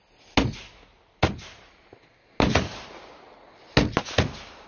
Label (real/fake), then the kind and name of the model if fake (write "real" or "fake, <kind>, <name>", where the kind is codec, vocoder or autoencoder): real